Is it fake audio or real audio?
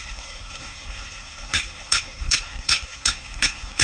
fake